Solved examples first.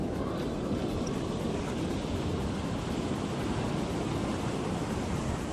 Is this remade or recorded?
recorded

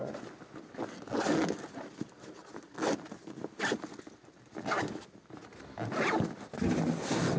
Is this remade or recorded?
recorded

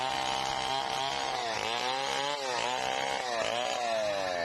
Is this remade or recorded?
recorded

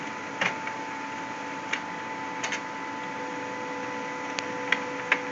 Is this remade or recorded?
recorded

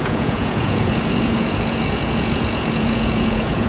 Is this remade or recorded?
remade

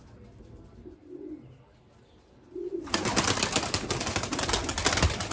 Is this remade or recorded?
recorded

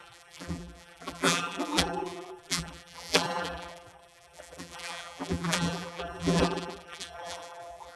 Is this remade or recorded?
remade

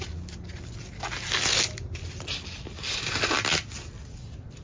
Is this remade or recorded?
recorded